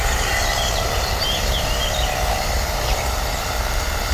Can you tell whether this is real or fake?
fake